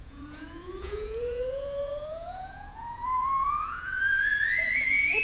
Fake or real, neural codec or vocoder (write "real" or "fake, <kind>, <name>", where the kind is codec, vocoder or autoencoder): fake, vocoder, Vocos